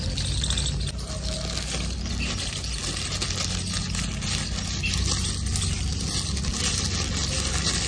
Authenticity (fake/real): real